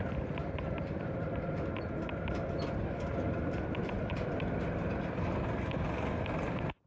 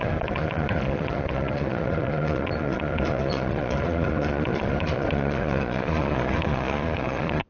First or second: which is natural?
first